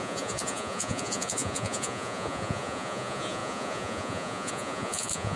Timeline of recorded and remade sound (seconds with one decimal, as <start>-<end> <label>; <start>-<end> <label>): 0.0-5.4 remade